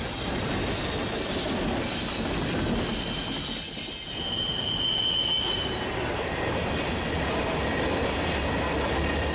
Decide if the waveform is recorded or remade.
recorded